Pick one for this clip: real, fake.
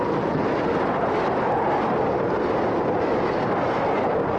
real